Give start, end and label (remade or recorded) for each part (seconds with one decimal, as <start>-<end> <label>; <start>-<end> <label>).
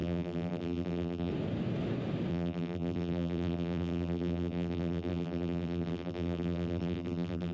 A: 0.0-1.3 remade; 1.3-2.3 recorded; 2.3-7.5 remade